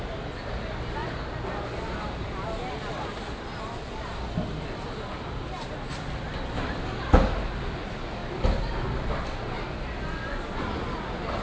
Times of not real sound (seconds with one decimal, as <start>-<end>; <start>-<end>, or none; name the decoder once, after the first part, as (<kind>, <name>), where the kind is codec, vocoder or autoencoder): none